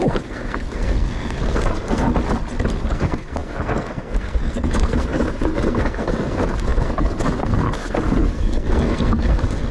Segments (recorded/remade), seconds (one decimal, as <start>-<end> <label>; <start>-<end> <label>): 0.0-2.1 remade; 2.1-2.9 recorded; 2.9-9.7 remade